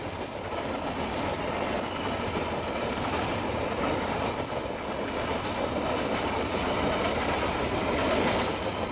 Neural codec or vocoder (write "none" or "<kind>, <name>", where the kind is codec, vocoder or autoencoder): none